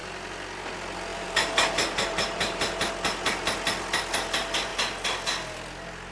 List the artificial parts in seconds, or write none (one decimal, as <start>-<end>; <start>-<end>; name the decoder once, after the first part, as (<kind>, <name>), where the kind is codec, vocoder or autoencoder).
1.1-2.9 (vocoder, BigVGAN v2)